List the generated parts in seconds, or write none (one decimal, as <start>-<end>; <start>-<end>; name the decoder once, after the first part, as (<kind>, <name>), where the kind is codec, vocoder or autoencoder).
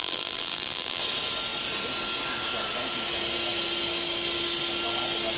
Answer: 0.0-1.0 (vocoder, BigVGAN v2)